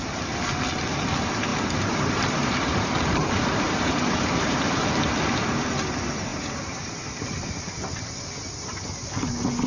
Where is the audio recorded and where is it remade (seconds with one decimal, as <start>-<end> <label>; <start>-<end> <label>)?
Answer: 0.0-1.5 recorded; 1.5-4.8 remade; 4.8-6.3 recorded; 6.3-7.2 remade; 7.2-9.7 recorded